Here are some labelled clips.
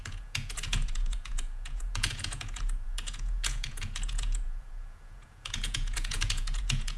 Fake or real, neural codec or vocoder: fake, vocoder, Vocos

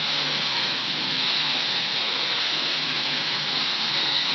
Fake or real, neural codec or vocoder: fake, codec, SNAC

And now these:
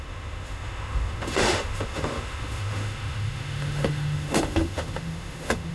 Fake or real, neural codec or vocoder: fake, autoencoder, DAC-VAE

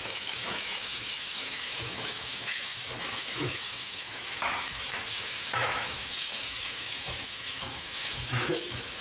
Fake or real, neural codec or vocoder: fake, autoencoder, DAC-VAE